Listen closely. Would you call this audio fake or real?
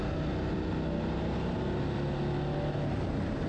real